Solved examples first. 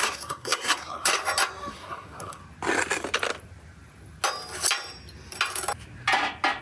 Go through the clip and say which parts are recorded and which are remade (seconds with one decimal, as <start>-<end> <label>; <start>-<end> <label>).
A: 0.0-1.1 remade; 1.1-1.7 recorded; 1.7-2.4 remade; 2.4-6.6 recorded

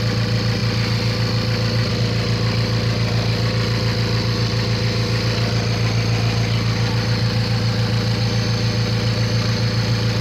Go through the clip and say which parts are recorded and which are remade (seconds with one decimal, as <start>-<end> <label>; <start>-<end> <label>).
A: 0.0-10.2 recorded

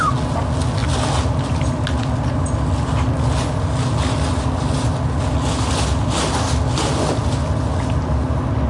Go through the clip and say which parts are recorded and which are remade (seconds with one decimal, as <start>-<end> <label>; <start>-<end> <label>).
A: 0.0-8.7 recorded